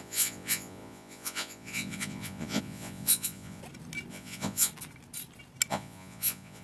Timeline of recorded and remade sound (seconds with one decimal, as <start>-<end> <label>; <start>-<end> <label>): 0.0-3.6 remade; 3.6-4.1 recorded; 4.1-4.7 remade; 4.7-5.7 recorded; 5.7-6.6 remade